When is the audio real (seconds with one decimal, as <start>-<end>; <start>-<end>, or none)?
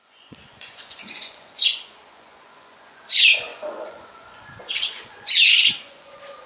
none